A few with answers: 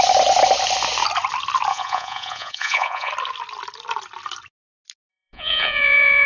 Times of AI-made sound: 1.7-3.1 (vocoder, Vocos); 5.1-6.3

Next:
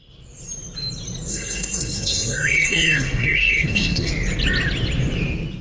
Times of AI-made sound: 1.3-4.1 (codec, SNAC)

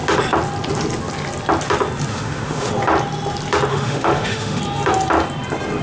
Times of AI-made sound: 2.1-2.7 (autoencoder, DAC-VAE); 3.7-4.6

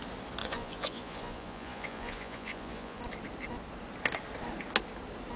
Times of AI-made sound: 0.4-3.0 (vocoder, Vocos)

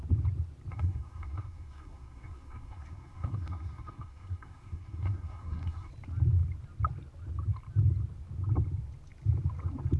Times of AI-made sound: 0.7-5.9 (codec, SNAC)

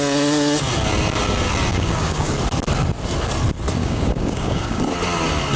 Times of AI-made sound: 1.7-2.3 (codec, DAC); 3.8-4.8